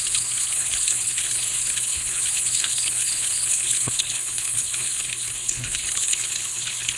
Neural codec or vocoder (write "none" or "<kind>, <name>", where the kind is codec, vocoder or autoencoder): codec, HILCodec